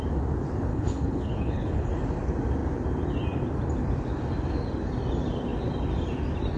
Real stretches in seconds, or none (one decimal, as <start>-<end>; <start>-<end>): 0.0-0.7; 1.9-6.6